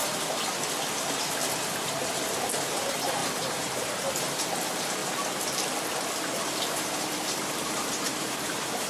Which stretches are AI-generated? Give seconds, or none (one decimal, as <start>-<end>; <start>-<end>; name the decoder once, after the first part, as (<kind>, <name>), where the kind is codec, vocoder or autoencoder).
2.6-5.0 (vocoder, BigVGAN v2); 6.7-8.9